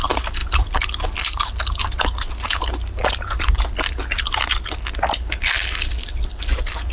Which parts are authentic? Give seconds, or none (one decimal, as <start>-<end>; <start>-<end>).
0.0-6.9